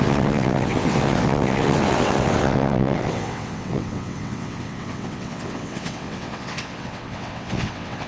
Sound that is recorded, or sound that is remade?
remade